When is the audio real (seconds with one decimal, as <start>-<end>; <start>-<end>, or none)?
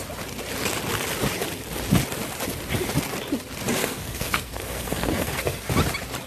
0.0-3.8; 5.7-6.3